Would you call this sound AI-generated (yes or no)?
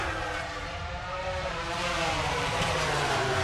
yes